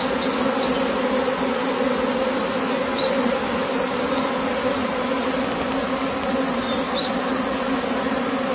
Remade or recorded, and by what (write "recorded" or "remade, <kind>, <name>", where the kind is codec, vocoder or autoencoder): recorded